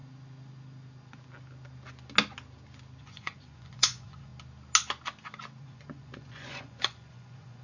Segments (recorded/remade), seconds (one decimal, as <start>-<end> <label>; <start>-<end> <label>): 0.0-3.0 recorded; 3.0-4.3 remade; 4.3-5.6 recorded; 5.6-7.6 remade